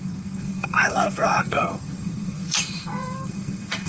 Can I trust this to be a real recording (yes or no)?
no